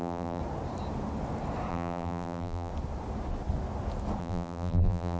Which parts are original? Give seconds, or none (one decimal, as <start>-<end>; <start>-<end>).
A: 0.4-1.7; 2.7-4.2